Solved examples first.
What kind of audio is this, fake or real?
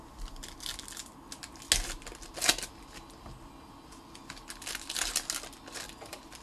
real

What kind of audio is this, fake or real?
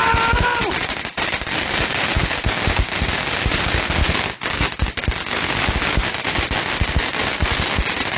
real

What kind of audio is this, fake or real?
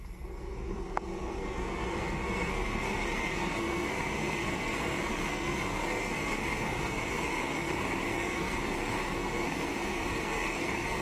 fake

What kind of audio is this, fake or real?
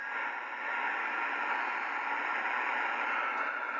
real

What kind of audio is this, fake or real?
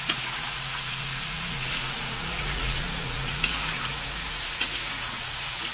fake